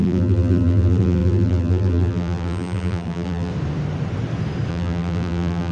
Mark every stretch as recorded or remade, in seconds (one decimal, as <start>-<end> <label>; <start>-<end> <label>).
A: 0.0-3.5 remade; 3.5-4.7 recorded; 4.7-5.7 remade